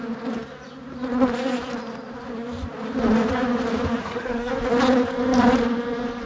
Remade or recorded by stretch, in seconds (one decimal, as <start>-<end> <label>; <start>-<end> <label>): 0.0-4.0 recorded; 4.0-4.5 remade; 4.5-6.3 recorded